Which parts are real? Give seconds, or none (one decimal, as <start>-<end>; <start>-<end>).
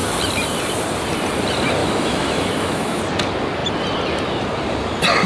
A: 0.0-1.8; 3.0-5.3